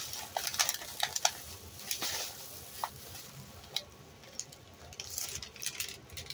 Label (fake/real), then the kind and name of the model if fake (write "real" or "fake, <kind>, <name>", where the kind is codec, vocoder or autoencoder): real